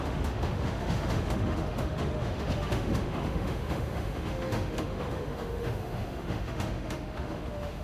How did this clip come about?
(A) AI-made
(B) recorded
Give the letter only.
A